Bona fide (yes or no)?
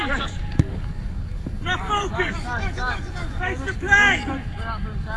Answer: no